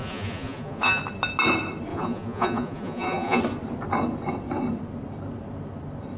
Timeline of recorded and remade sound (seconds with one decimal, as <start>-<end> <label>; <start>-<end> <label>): 0.0-1.0 remade; 1.0-1.9 recorded; 1.9-3.4 remade; 3.4-6.2 recorded

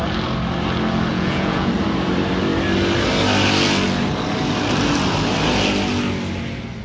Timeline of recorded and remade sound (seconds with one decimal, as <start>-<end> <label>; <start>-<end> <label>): 0.0-1.1 recorded; 1.1-1.7 remade; 1.7-6.8 recorded

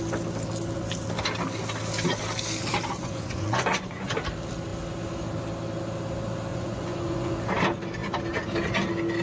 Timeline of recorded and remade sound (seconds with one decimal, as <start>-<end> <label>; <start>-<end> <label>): 0.0-3.0 recorded; 3.0-4.1 remade; 4.1-6.5 recorded; 6.5-7.3 remade; 7.3-9.2 recorded

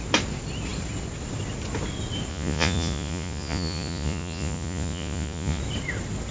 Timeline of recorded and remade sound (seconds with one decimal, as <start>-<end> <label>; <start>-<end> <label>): 0.0-2.3 recorded; 2.3-5.6 remade; 5.6-6.3 recorded

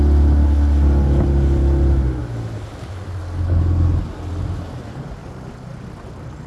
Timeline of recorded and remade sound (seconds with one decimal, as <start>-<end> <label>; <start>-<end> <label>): 0.0-6.5 recorded